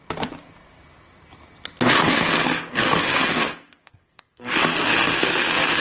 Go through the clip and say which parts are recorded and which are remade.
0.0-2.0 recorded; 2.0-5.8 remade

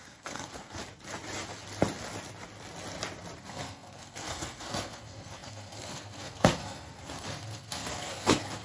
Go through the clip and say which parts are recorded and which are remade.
0.0-0.8 remade; 0.8-3.4 recorded; 3.4-8.6 remade

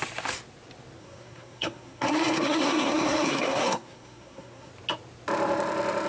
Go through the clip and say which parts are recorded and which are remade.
0.0-1.0 recorded; 1.0-4.7 remade; 4.7-6.1 recorded

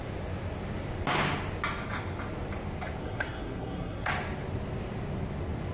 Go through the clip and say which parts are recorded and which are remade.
0.0-3.0 recorded; 3.0-4.1 remade; 4.1-5.7 recorded